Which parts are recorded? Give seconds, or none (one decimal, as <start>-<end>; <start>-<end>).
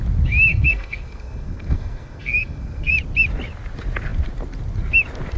0.0-0.5; 2.9-5.4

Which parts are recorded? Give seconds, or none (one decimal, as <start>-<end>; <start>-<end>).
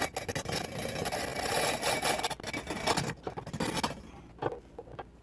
0.0-5.2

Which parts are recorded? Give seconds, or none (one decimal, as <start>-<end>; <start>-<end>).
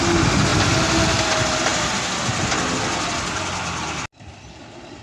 0.0-5.0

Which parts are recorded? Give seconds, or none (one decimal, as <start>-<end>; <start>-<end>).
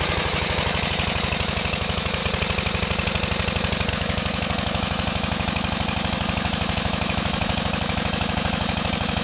2.2-3.9